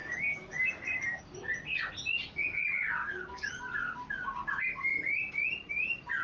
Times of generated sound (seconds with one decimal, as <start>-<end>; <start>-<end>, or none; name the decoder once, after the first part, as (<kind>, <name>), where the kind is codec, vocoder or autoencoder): 0.0-1.2 (codec, DAC); 3.0-3.5